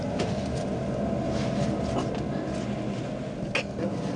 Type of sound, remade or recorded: recorded